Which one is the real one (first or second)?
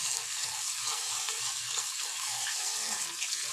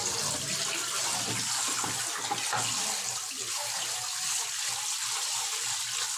second